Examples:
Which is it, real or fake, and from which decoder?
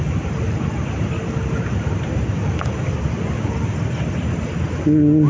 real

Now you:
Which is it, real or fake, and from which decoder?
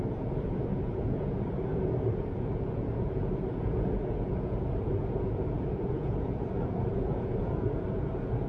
fake, vocoder, Vocos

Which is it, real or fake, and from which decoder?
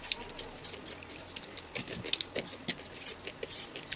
real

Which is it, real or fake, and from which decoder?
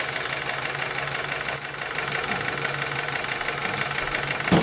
real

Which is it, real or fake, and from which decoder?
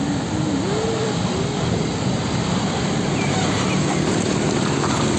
fake, vocoder, BigVGAN v2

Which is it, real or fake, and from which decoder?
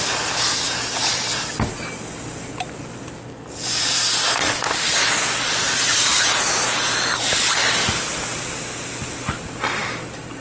real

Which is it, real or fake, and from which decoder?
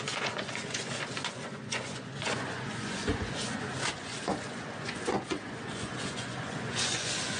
fake, vocoder, Vocos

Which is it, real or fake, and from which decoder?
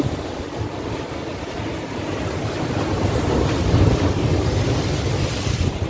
real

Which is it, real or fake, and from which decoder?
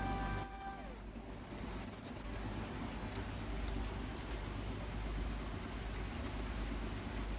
real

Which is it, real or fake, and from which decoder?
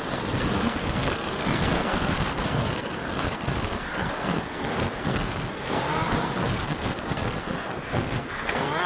fake, codec, SNAC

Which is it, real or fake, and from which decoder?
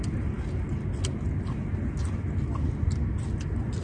real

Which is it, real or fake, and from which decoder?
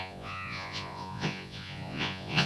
fake, vocoder, Vocos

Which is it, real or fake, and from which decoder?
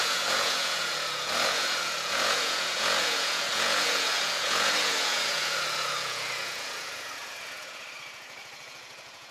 fake, vocoder, Vocos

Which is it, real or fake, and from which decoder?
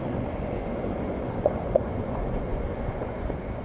fake, vocoder, Vocos